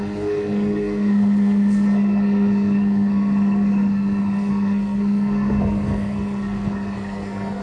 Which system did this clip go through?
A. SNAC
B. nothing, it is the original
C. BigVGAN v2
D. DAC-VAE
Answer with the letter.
A